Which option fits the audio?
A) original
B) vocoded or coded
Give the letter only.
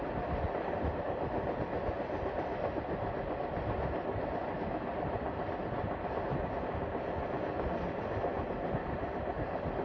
A